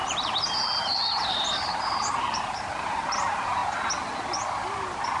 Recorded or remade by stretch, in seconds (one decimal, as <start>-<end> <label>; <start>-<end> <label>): 0.0-3.6 remade; 3.6-5.2 recorded